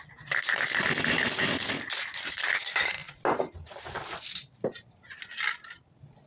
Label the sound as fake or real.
real